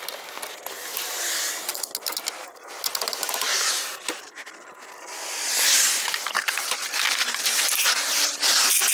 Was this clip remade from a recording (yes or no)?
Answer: no